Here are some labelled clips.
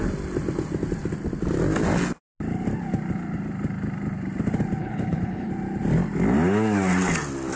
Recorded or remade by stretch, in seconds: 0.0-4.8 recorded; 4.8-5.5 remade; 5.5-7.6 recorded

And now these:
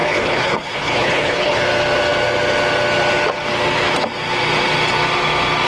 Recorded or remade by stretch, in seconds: 0.0-1.6 remade; 1.6-5.7 recorded

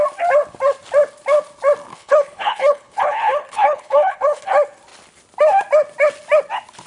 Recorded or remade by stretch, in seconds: 0.0-1.9 recorded; 1.9-4.5 remade; 4.5-6.9 recorded